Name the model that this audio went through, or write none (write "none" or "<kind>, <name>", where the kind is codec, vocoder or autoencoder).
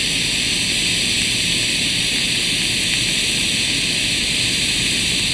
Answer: none